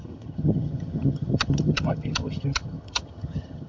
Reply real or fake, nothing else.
fake